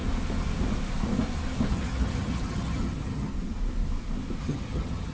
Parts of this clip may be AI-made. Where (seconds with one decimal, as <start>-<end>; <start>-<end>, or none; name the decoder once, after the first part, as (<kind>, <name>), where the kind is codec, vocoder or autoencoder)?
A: 1.7-3.3 (vocoder, HiFi-GAN); 4.4-5.1

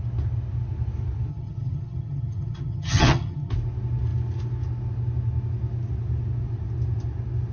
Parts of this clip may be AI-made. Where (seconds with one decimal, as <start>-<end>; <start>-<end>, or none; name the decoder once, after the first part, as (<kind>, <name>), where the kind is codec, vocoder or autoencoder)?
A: 1.3-3.5 (vocoder, HiFi-GAN)